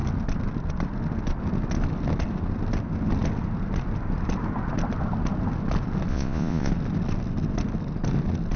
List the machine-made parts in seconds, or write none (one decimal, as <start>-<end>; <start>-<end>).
6.1-6.7